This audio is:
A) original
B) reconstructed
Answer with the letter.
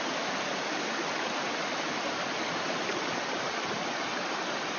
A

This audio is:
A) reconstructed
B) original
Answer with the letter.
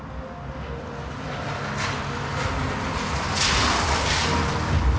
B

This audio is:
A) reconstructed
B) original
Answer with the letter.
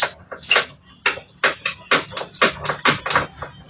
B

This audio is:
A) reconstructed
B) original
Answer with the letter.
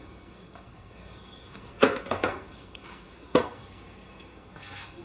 A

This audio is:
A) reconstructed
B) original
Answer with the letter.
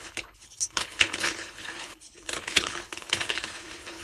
A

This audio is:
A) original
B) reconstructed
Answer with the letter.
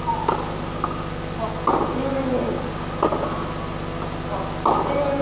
A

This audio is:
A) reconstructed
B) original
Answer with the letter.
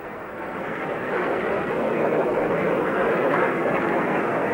A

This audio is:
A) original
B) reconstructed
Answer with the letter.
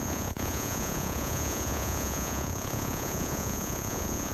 B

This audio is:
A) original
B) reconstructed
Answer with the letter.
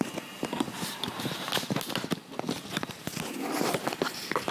A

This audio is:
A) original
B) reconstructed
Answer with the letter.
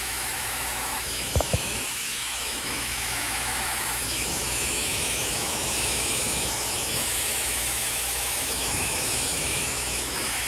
B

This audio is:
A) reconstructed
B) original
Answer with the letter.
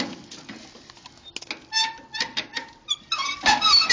B